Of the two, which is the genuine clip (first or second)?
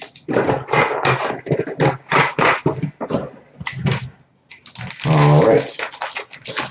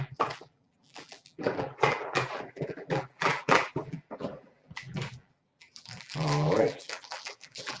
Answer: first